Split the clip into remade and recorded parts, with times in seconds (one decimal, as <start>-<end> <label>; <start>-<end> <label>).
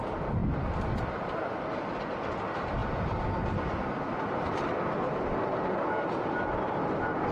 0.0-0.4 recorded; 0.4-1.3 remade; 1.3-2.8 recorded; 2.8-6.6 remade; 6.6-7.3 recorded